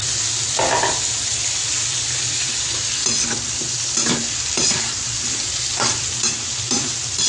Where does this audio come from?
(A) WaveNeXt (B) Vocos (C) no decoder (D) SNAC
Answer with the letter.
C